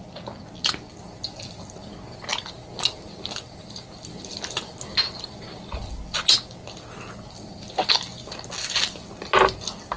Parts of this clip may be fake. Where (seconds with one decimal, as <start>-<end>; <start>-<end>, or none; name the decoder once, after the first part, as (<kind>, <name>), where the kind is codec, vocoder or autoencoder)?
none